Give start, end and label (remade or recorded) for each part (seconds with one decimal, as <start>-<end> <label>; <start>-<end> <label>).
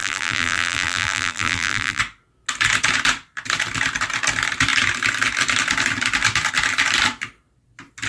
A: 0.0-2.0 remade; 2.0-8.1 recorded